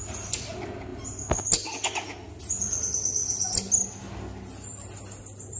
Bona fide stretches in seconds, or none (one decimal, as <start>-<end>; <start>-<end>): 0.0-5.6